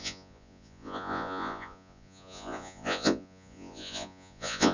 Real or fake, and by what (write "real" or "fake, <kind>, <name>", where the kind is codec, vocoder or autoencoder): fake, vocoder, Vocos